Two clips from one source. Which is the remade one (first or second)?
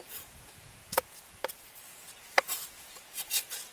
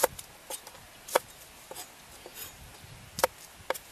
first